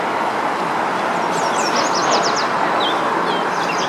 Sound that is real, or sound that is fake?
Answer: real